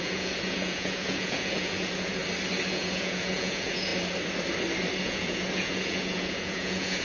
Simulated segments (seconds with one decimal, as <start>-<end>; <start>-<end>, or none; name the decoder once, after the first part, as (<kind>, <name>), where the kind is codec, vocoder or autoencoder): 0.0-2.2 (vocoder, Vocos); 2.7-3.9; 5.0-7.0